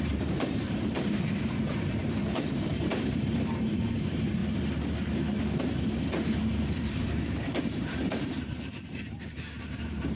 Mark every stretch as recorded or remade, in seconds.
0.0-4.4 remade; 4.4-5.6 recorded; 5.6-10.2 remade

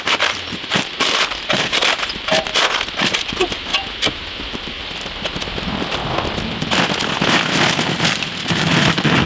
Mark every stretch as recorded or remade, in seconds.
0.0-2.5 remade; 2.5-3.0 recorded; 3.0-3.7 remade; 3.7-4.8 recorded; 4.8-6.0 remade; 6.0-7.8 recorded; 7.8-9.3 remade

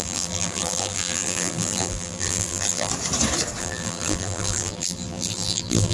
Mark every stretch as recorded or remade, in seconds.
0.0-2.9 remade; 2.9-3.6 recorded; 3.6-5.9 remade

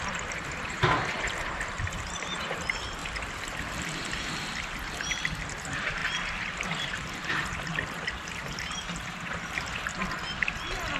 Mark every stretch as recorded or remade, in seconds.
0.0-3.0 remade; 3.0-5.3 recorded; 5.3-6.0 remade; 6.0-6.6 recorded; 6.6-10.0 remade; 10.0-11.0 recorded

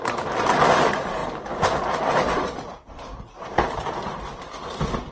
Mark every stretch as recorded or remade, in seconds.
0.0-5.1 recorded

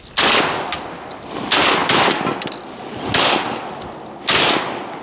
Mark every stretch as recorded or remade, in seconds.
0.0-5.0 recorded